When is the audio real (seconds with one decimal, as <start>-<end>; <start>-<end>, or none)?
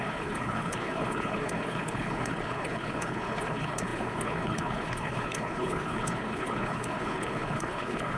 none